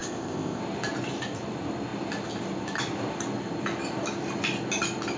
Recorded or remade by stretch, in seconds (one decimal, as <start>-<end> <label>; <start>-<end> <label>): 0.0-0.6 remade; 0.6-5.2 recorded